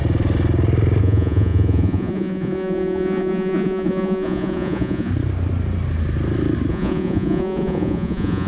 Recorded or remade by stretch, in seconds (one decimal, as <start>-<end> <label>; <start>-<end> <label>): 0.0-1.0 recorded; 1.0-5.1 remade; 5.1-6.7 recorded; 6.7-8.5 remade